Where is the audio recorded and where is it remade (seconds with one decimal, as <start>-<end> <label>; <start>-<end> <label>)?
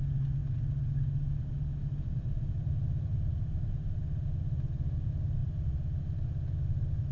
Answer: 0.0-7.1 recorded